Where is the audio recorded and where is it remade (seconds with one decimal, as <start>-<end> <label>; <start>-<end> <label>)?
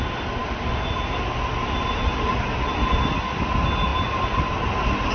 0.0-5.1 recorded